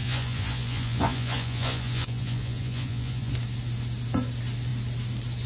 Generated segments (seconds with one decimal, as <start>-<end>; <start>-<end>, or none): 0.0-3.3